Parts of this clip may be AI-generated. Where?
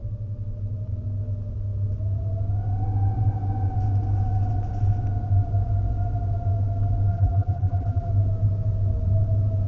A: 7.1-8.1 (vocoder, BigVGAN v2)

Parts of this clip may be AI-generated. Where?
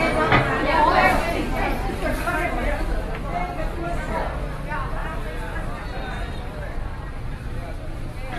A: 1.9-2.7 (vocoder, BigVGAN v2)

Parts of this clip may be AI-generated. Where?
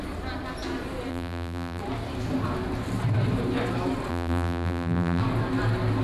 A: 1.1-1.8 (vocoder, BigVGAN v2); 4.1-5.2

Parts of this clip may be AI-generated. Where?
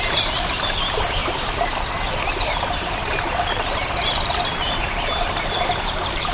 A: 0.0-1.2 (vocoder, BigVGAN v2); 2.9-6.3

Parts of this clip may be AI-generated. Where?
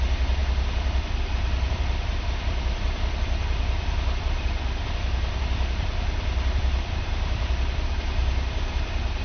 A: 0.0-9.2 (vocoder, BigVGAN v2)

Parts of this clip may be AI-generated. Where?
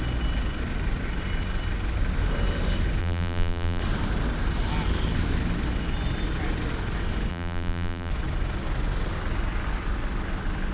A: 3.0-3.8 (vocoder, BigVGAN v2); 7.3-8.1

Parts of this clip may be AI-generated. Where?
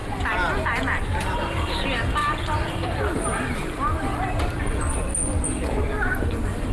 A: 2.2-3.5 (vocoder, BigVGAN v2)